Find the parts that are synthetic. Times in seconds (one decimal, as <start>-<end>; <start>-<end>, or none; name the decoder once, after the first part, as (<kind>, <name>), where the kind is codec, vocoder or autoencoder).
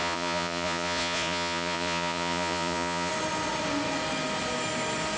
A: 0.0-3.1 (vocoder, Vocos)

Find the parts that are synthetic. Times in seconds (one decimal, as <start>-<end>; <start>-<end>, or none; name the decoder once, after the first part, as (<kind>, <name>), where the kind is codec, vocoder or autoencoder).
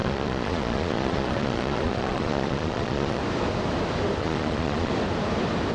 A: 0.0-3.2 (vocoder, Vocos); 4.2-4.9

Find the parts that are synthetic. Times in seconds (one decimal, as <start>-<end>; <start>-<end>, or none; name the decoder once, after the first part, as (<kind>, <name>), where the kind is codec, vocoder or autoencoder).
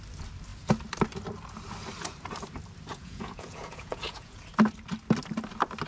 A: 2.9-4.4 (vocoder, Vocos)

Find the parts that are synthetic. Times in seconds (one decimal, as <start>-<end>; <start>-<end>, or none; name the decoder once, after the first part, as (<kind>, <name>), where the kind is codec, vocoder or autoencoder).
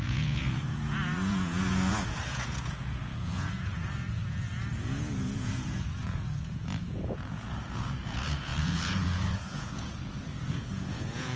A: 0.0-11.4 (vocoder, Vocos)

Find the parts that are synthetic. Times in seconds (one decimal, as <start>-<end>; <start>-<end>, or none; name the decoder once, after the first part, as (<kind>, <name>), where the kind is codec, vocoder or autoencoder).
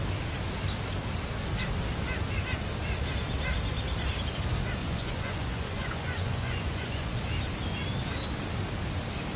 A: 4.8-7.3 (vocoder, Vocos)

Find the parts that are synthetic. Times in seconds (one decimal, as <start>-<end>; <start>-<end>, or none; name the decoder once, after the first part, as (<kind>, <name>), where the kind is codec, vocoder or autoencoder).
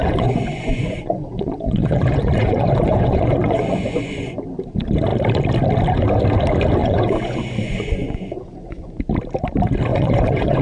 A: 0.0-4.4 (vocoder, Vocos); 6.8-8.9; 9.9-10.6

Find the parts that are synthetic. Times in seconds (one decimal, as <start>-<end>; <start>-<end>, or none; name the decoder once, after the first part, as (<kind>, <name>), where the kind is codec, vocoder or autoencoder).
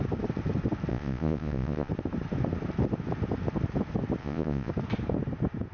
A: 0.9-1.9 (vocoder, Vocos); 4.2-4.7